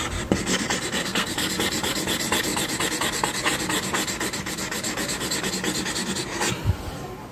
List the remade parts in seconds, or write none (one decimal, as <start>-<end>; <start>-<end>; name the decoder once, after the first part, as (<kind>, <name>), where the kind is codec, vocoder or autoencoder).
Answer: 1.0-1.5 (codec, SNAC)